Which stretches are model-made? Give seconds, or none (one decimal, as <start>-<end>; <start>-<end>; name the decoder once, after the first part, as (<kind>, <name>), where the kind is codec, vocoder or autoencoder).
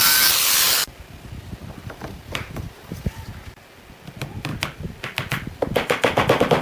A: 1.8-3.3 (vocoder, BigVGAN v2)